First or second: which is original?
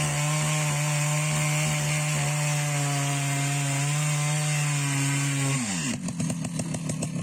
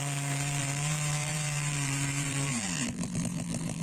first